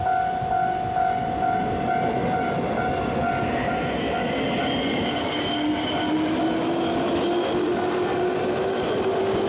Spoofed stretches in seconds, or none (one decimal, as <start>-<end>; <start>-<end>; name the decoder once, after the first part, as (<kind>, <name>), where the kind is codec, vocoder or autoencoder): none